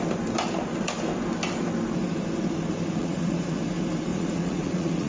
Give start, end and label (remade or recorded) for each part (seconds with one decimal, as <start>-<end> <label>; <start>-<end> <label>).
0.0-3.0 recorded; 3.0-3.6 remade; 3.6-4.1 recorded; 4.1-5.1 remade